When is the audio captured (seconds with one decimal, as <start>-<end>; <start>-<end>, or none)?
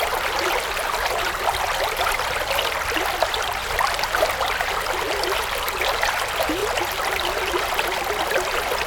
3.6-4.8; 6.6-8.9